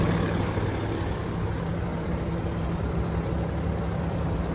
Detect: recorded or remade recorded